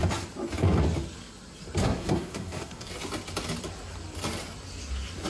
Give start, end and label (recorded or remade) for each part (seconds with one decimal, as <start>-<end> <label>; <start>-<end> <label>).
0.0-1.8 recorded; 1.8-2.9 remade; 2.9-5.3 recorded